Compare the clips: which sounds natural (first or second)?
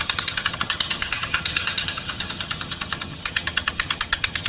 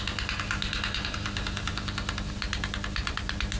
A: second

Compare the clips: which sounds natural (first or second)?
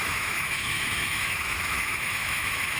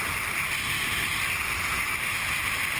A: second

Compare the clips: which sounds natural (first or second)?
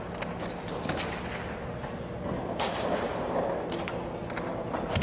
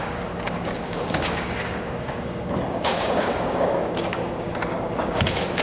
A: first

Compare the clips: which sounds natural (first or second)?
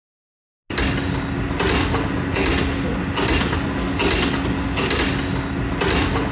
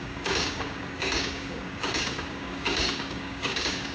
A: first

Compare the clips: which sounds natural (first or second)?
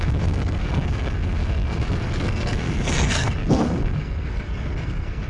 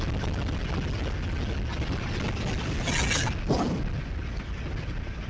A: second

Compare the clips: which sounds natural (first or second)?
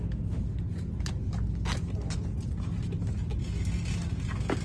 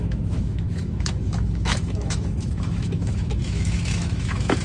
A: first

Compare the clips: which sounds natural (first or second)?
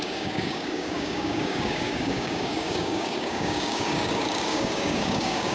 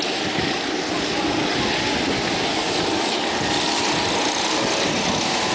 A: second